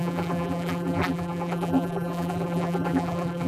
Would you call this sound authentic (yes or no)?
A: no